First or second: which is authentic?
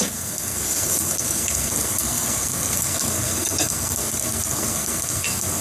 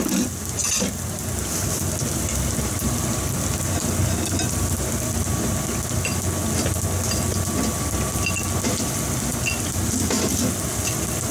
second